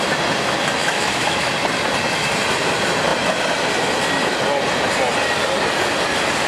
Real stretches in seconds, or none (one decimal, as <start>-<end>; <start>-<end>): 0.0-0.8; 1.5-6.5